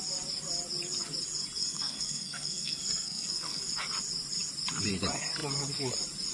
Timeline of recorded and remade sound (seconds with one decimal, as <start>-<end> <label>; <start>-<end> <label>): 0.0-1.6 recorded; 1.6-3.7 remade; 3.7-6.3 recorded